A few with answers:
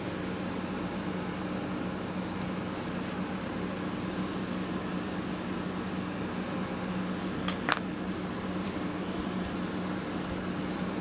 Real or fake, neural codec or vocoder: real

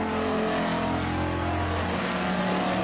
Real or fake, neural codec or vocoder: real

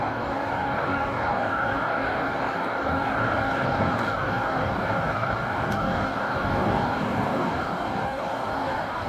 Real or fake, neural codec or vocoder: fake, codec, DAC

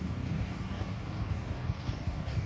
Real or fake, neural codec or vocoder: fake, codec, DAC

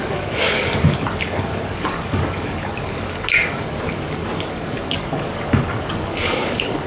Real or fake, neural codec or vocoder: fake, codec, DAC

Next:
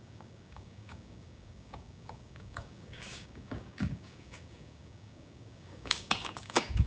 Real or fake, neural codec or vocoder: fake, codec, DAC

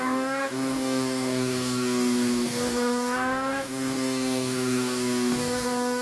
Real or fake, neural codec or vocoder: fake, codec, DAC